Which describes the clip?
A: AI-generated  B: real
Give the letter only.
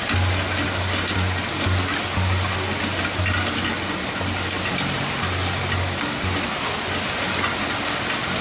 B